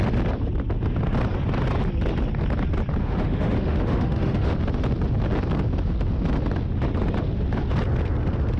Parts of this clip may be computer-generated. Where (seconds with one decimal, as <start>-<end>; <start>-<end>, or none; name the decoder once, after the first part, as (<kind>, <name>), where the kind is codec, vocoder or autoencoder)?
3.0-4.5 (autoencoder, DAC-VAE)